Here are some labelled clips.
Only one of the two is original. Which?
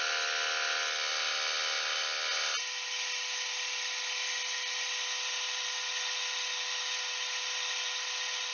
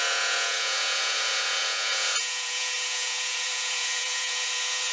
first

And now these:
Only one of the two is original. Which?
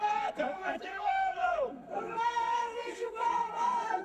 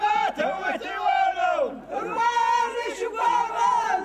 second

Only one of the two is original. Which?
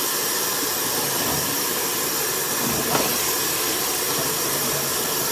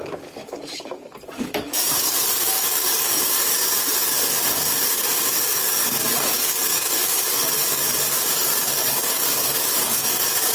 first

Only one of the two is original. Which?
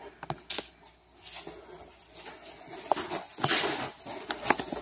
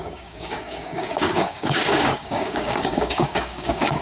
first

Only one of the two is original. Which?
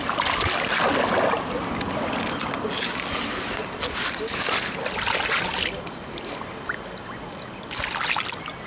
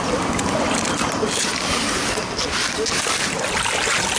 first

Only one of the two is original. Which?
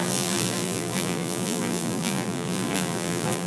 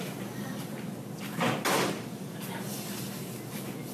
second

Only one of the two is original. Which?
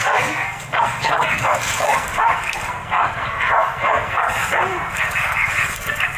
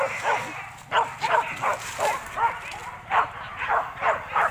second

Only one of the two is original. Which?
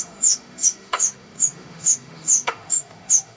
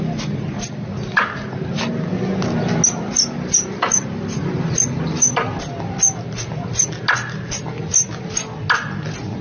second